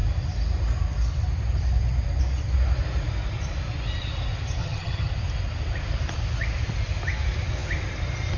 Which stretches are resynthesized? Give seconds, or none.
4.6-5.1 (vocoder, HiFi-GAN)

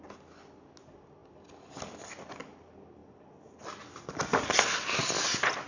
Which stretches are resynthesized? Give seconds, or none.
none

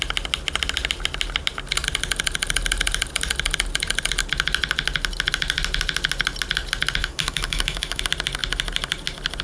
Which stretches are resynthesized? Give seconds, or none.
7.0-8.0 (autoencoder, DAC-VAE)

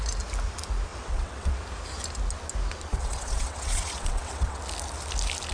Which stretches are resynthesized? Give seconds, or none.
0.9-1.6 (vocoder, WaveNeXt); 2.9-4.6

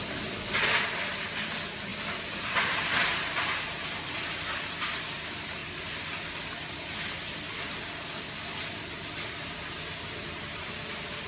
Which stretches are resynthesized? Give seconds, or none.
none

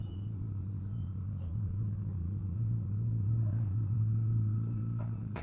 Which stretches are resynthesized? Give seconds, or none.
0.0-5.4 (vocoder, Vocos)

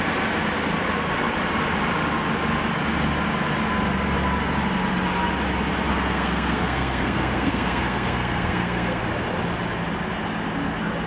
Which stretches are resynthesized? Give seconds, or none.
5.9-9.0 (codec, SNAC)

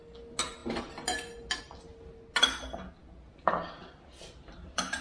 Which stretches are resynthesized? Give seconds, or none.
none